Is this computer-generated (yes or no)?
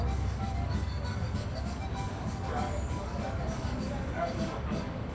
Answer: yes